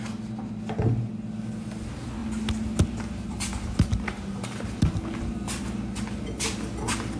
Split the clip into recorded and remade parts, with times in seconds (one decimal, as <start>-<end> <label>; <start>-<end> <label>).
0.0-7.2 recorded